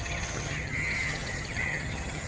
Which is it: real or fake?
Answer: fake